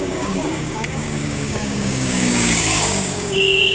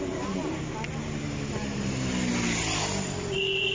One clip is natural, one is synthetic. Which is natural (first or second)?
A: second